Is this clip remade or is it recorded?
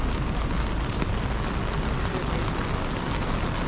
recorded